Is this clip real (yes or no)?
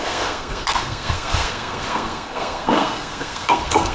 no